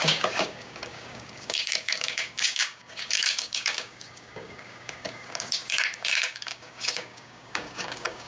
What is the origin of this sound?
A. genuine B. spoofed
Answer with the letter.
B